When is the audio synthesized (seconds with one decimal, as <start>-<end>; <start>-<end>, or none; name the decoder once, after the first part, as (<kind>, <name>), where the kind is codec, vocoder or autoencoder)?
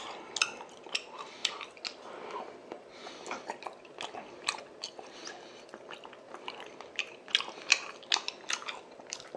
none